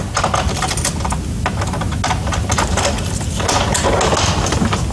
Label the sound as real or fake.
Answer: real